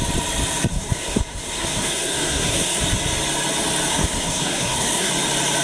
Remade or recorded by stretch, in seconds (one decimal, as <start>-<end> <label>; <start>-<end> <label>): 0.0-0.7 recorded; 0.7-2.8 remade; 2.8-3.9 recorded; 3.9-5.1 remade; 5.1-5.6 recorded